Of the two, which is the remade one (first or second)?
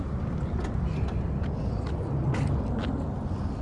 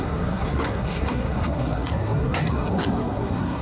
second